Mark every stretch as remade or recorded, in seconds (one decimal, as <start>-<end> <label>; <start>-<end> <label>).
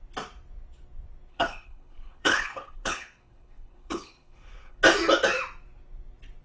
0.0-1.3 recorded; 1.3-4.8 remade; 4.8-6.4 recorded